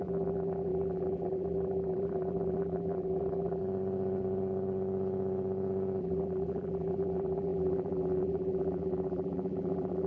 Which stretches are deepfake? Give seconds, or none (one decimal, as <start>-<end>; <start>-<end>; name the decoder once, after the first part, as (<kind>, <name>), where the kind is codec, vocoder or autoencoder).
0.0-3.6 (vocoder, BigVGAN v2); 6.0-10.1